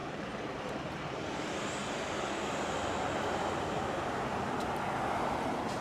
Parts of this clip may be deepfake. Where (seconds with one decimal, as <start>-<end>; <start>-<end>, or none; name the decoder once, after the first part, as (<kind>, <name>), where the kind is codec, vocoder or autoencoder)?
0.0-1.8 (vocoder, BigVGAN v2); 5.3-5.8